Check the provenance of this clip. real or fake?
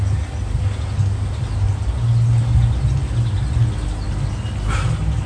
real